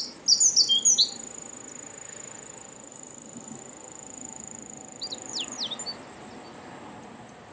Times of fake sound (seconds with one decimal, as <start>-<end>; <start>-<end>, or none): 2.9-3.6